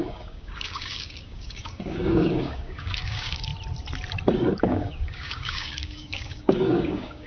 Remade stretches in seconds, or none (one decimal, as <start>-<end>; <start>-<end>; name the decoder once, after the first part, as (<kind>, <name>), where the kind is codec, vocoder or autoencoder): 0.0-3.5 (codec, DAC); 4.6-7.3

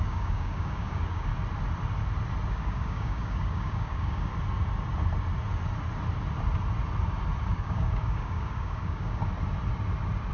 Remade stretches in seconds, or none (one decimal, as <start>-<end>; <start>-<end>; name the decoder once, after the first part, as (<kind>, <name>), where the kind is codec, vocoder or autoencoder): 0.0-1.3 (codec, DAC); 2.5-4.3; 7.5-9.2

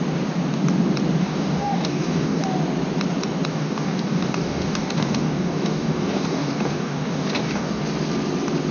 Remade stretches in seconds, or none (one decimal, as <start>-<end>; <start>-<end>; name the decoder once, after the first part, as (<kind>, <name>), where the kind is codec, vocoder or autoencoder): 1.2-2.4 (codec, DAC); 3.5-7.8

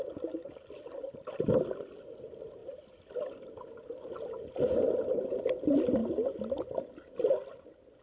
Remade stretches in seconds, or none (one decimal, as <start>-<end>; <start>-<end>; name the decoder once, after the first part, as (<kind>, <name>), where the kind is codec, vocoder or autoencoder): none

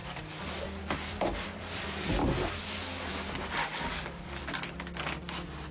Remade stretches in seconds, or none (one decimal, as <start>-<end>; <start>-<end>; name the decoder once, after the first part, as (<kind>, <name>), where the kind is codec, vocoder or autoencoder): 2.2-3.1 (codec, DAC); 3.6-4.4